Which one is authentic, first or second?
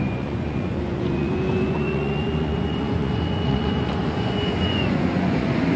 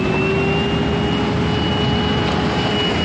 second